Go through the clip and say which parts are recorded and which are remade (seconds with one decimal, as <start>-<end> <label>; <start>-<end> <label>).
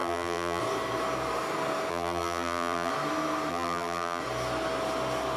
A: 0.0-0.6 remade; 0.6-1.9 recorded; 1.9-2.9 remade; 2.9-3.5 recorded; 3.5-4.2 remade; 4.2-5.4 recorded